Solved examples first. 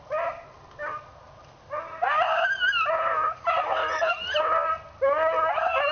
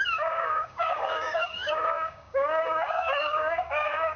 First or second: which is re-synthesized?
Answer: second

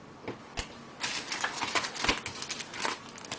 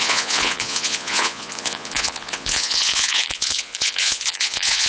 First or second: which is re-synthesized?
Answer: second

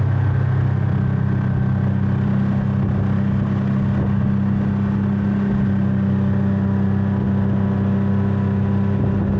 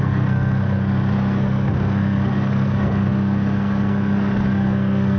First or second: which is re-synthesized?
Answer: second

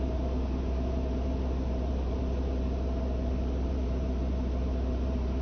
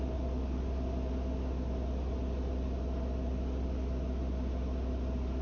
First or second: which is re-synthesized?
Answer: first